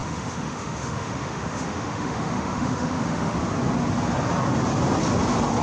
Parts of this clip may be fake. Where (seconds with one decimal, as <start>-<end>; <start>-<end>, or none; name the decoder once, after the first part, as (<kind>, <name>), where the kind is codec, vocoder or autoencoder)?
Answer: 0.0-3.4 (autoencoder, DAC-VAE)